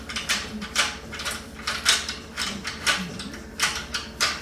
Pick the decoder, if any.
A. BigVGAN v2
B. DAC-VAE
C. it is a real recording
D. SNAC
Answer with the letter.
A